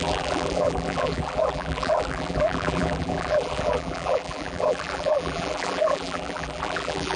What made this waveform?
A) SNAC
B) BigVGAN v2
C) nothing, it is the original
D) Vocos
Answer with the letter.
B